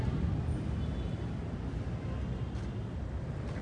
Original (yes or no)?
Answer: yes